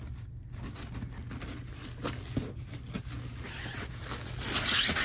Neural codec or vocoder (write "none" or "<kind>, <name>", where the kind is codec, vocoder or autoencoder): none